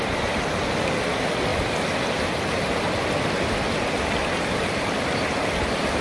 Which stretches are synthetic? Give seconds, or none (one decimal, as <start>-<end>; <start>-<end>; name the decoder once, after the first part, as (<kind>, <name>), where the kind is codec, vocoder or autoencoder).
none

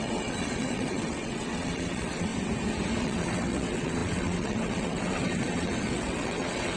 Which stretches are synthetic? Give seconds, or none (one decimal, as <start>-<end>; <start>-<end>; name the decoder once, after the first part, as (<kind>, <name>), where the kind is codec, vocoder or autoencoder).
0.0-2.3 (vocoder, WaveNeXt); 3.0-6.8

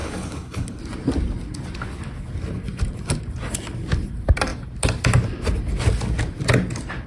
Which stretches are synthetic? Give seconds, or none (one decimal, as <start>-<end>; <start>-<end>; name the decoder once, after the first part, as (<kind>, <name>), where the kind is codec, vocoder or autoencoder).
0.0-0.8 (codec, HILCodec)

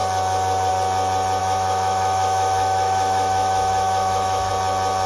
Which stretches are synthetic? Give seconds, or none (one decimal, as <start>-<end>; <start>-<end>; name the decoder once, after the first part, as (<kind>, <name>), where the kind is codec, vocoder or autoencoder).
1.4-4.5 (autoencoder, DAC-VAE)

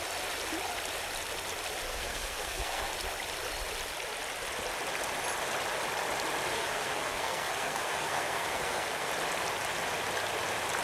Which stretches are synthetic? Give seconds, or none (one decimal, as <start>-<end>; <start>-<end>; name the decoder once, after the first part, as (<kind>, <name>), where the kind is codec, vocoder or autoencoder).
1.9-2.9 (codec, SNAC); 6.5-9.1